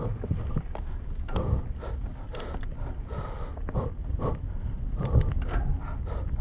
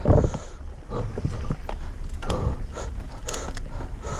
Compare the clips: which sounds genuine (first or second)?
second